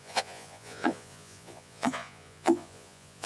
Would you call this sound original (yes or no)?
no